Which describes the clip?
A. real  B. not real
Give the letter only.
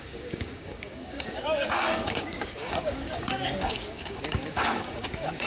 B